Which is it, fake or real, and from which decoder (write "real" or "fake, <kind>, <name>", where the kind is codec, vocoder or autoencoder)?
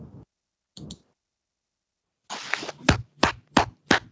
real